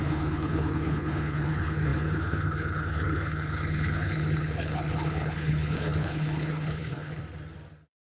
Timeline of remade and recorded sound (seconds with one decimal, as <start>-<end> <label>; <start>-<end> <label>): 0.0-7.2 remade; 7.2-8.1 recorded